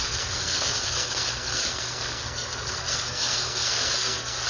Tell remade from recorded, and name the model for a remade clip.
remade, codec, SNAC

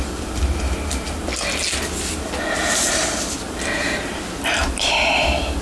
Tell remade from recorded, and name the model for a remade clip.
recorded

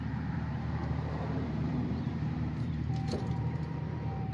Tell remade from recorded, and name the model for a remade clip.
remade, vocoder, BigVGAN v2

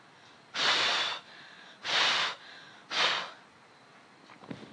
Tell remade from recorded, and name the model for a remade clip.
recorded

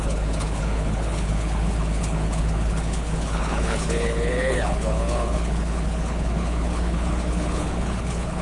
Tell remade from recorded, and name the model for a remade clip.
remade, codec, HILCodec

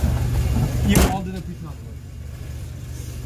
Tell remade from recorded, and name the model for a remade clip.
recorded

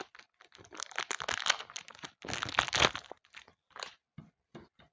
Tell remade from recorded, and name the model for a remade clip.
recorded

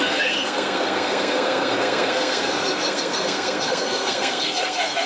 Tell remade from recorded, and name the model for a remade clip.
remade, codec, SNAC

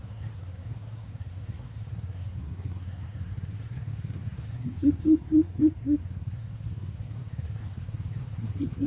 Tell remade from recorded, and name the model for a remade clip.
remade, codec, SNAC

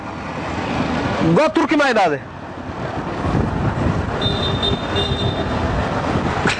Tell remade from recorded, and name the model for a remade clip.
recorded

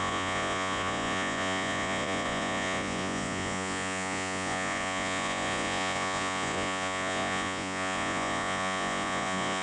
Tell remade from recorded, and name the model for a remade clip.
remade, vocoder, Vocos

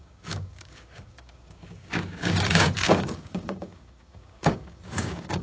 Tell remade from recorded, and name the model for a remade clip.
remade, codec, DAC